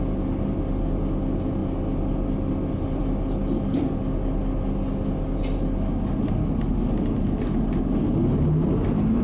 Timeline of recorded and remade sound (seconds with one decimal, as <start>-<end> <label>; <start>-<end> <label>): 0.0-9.2 recorded